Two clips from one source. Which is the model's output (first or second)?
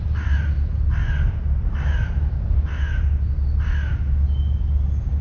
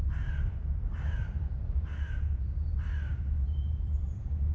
second